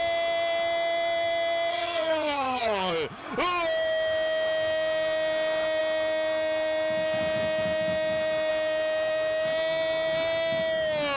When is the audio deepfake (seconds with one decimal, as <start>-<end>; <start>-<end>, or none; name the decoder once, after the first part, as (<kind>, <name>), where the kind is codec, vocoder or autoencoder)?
1.7-2.9 (vocoder, HiFi-GAN)